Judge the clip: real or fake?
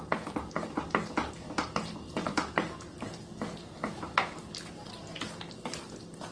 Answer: real